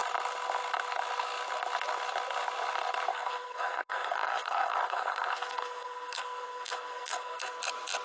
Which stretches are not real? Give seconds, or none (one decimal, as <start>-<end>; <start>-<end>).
3.1-7.6